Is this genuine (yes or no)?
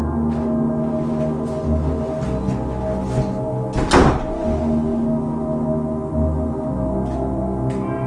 yes